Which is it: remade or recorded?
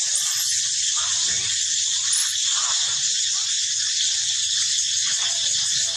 recorded